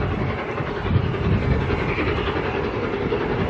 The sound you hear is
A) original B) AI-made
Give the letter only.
A